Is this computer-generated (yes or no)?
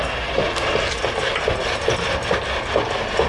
no